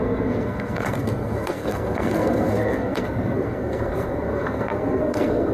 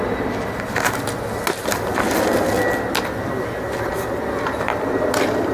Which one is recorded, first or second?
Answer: second